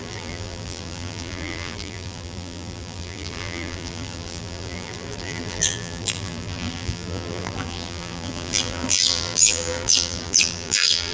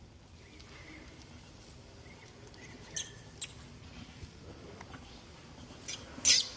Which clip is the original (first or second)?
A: second